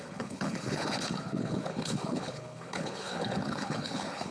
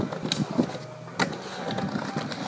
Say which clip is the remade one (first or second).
first